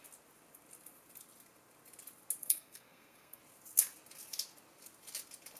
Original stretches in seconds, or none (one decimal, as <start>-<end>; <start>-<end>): 0.0-2.4; 3.4-5.6